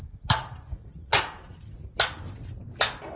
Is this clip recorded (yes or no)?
yes